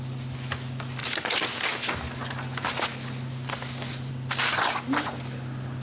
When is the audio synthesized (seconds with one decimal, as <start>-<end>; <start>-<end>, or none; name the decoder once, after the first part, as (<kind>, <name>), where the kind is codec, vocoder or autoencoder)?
none